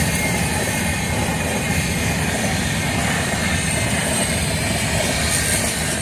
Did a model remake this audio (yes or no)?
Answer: no